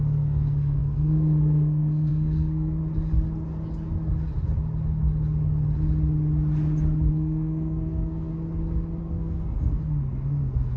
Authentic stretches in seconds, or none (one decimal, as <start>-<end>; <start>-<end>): 2.8-7.1; 8.3-9.0